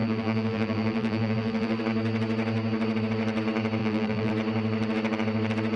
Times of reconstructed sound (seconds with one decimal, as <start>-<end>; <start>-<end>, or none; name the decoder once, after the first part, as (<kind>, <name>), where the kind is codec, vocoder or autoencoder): 0.0-1.8 (vocoder, BigVGAN v2); 3.8-4.3